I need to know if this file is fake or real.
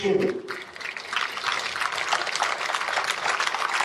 real